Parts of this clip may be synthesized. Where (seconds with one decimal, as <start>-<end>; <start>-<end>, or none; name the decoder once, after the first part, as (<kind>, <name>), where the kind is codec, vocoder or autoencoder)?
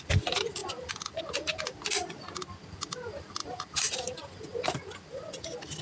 0.6-1.2 (vocoder, BigVGAN v2); 3.4-3.9